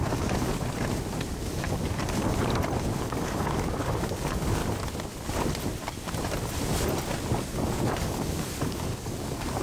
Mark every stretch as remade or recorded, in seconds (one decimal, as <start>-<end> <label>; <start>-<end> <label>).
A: 0.0-0.5 remade; 0.5-1.4 recorded; 1.4-2.0 remade; 2.0-3.0 recorded; 3.0-4.6 remade; 4.6-7.4 recorded; 7.4-9.6 remade